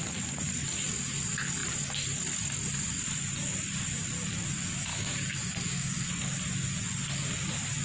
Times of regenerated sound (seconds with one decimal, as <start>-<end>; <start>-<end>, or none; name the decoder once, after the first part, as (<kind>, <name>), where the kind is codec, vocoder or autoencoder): 4.9-6.1 (autoencoder, DAC-VAE)